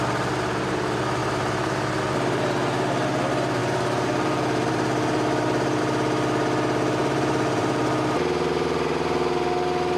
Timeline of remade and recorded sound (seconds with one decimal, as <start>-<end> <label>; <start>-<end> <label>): 0.0-1.2 recorded; 1.2-2.0 remade; 2.0-3.6 recorded; 3.6-5.8 remade; 5.8-7.0 recorded; 7.0-7.8 remade; 7.8-10.0 recorded